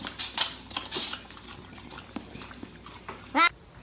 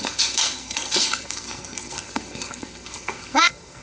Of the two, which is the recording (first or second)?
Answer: first